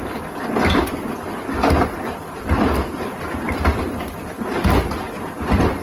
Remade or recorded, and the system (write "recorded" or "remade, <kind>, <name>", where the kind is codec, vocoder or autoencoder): recorded